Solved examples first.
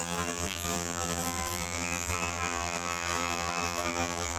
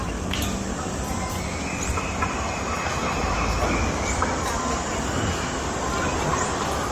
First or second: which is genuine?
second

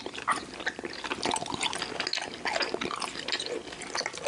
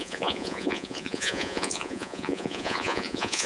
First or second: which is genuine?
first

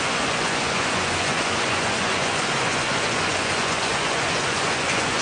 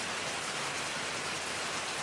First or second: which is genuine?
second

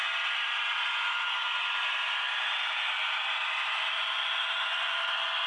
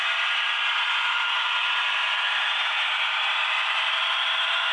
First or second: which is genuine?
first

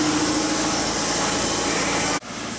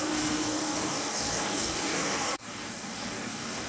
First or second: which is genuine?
first